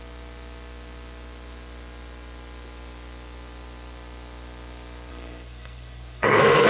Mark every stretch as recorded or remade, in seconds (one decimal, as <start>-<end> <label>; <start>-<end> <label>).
0.0-5.1 recorded; 5.1-6.7 remade